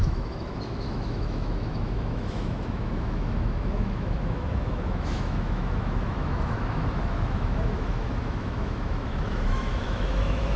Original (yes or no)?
no